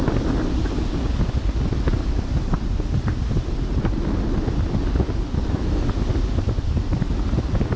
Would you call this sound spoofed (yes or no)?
no